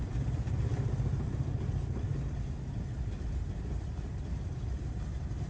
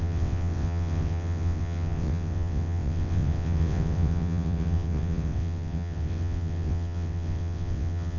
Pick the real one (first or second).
first